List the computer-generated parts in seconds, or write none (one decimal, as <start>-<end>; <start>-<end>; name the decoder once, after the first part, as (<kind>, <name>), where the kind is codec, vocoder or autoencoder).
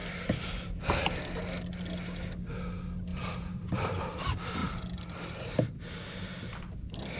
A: 0.0-0.8 (vocoder, BigVGAN v2); 3.1-4.0